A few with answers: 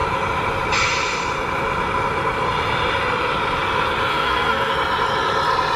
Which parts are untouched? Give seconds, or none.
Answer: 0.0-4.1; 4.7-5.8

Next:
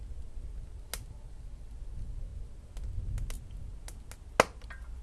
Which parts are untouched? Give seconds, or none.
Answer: 0.0-5.0